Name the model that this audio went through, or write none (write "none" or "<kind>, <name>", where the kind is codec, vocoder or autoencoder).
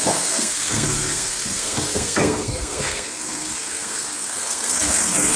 codec, SNAC